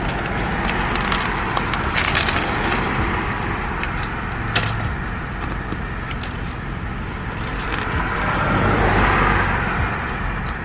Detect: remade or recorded recorded